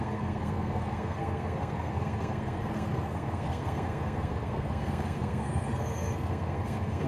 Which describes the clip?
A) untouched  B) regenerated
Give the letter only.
B